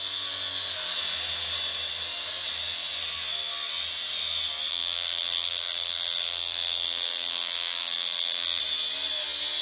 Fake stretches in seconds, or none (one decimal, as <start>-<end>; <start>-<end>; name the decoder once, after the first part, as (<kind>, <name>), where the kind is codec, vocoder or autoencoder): 4.7-8.6 (vocoder, BigVGAN v2)